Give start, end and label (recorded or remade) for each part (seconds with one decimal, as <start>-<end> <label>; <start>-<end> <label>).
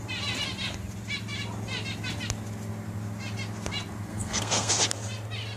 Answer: 0.0-4.1 recorded; 4.1-4.7 remade; 4.7-5.6 recorded